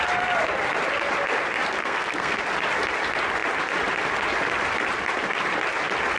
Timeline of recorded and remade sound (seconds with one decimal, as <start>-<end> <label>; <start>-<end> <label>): 0.0-1.8 recorded; 1.8-2.4 remade; 2.4-6.2 recorded